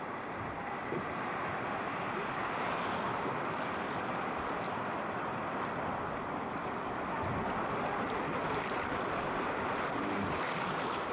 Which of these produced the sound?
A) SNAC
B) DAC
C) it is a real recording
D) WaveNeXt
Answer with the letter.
C